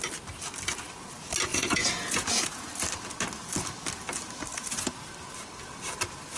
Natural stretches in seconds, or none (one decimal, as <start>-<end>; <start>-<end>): 0.0-1.5; 2.7-4.5; 5.1-6.4